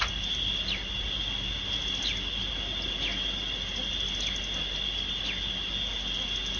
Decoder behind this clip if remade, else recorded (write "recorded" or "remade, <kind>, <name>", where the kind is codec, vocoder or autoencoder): recorded